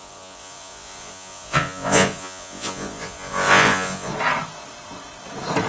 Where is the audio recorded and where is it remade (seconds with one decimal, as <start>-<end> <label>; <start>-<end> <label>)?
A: 0.0-4.1 remade; 4.1-5.7 recorded